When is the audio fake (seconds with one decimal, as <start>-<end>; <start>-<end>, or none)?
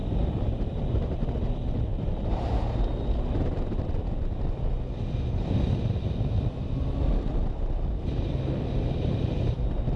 0.7-2.9; 7.3-10.0